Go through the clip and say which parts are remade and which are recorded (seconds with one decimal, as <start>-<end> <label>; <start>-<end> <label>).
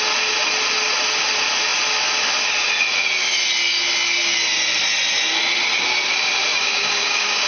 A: 0.0-6.5 recorded; 6.5-7.5 remade